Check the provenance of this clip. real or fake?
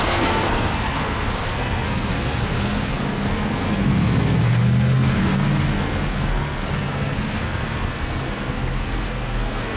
fake